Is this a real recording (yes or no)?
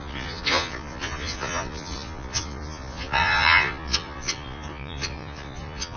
no